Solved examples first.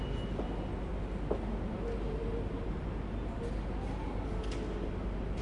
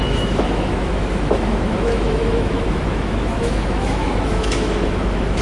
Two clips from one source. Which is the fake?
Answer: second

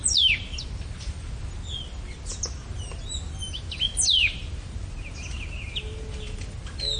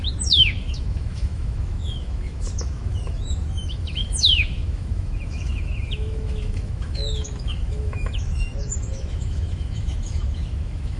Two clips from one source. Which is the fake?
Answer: second